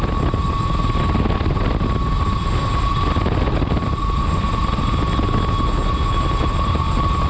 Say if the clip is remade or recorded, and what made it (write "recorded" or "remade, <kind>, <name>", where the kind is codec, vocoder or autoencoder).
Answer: recorded